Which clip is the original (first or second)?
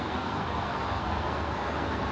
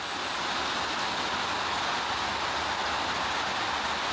second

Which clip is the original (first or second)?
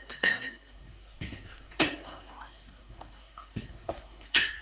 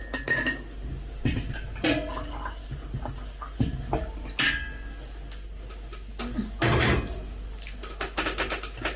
second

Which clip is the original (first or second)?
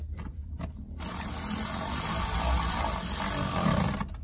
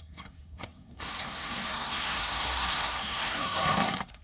first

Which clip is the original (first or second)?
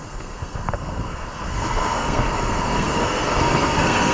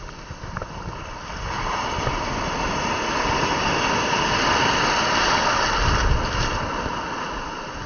second